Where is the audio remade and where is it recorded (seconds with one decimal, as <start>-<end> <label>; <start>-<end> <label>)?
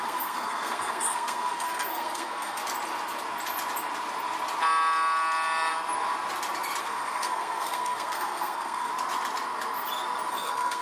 0.0-2.6 remade; 2.6-6.8 recorded; 6.8-8.9 remade; 8.9-10.3 recorded; 10.3-10.8 remade